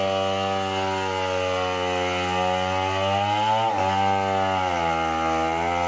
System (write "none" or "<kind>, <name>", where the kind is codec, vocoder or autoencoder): none